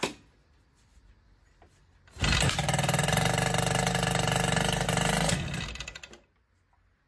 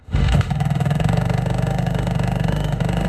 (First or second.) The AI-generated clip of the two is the second